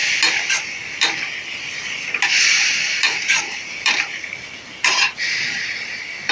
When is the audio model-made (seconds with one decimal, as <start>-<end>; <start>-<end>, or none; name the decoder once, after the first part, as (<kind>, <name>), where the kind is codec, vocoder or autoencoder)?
2.7-6.3 (vocoder, BigVGAN v2)